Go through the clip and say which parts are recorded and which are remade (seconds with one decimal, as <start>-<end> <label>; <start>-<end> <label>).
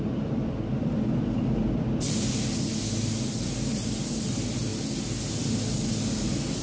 0.0-6.6 recorded